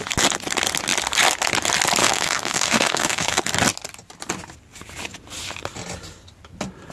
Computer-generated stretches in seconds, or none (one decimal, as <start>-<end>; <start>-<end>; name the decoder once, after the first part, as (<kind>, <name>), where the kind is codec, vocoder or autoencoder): 2.0-3.4 (autoencoder, DAC-VAE)

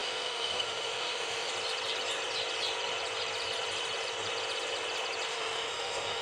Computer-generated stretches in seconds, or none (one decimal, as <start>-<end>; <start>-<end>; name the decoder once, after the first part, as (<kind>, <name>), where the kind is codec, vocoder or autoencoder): 0.0-1.5 (autoencoder, DAC-VAE); 5.3-6.2

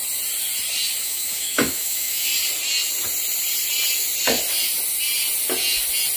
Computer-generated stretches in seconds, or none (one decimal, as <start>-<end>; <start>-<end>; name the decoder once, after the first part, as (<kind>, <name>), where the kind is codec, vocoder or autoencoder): 1.0-2.3 (autoencoder, DAC-VAE)